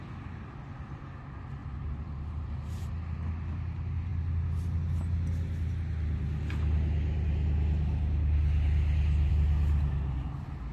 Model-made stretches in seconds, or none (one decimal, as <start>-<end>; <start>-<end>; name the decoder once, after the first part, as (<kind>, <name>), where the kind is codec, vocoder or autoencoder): 1.6-2.9 (vocoder, BigVGAN v2)